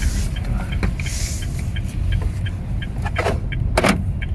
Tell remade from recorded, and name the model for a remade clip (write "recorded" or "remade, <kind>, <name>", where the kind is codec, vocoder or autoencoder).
recorded